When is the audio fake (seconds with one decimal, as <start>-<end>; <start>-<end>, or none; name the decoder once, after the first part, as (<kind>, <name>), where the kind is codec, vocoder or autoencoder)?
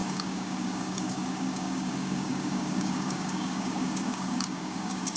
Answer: 0.0-5.2 (codec, DAC)